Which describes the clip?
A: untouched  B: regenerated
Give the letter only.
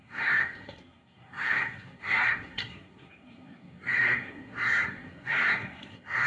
B